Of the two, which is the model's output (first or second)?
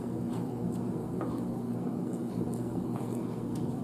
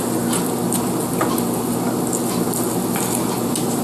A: first